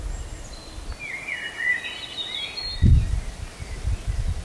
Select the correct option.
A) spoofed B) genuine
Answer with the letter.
B